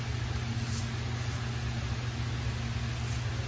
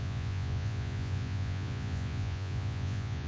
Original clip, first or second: first